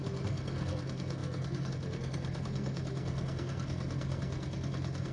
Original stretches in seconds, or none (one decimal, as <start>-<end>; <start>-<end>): none

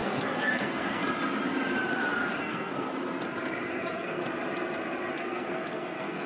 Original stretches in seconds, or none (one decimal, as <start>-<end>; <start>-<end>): 1.0-2.4; 2.9-3.7; 4.2-5.1